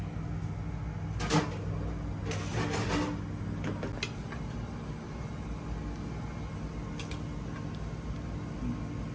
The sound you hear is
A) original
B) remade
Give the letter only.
A